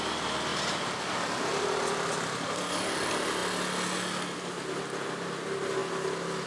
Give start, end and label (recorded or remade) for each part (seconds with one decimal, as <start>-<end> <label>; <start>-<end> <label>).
0.0-0.5 recorded; 0.5-3.0 remade; 3.0-6.5 recorded